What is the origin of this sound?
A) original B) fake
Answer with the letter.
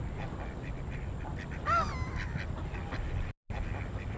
A